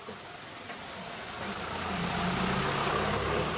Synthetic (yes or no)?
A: no